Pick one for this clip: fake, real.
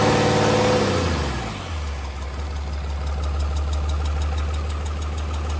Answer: real